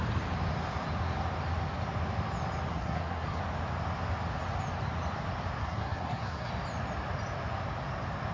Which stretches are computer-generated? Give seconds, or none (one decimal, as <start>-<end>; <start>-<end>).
2.7-3.4; 5.6-6.5